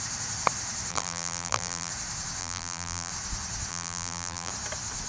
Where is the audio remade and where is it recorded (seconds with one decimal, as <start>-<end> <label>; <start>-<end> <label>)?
0.0-0.9 recorded; 0.9-1.9 remade; 1.9-2.4 recorded; 2.4-3.1 remade; 3.1-3.7 recorded; 3.7-4.5 remade; 4.5-5.1 recorded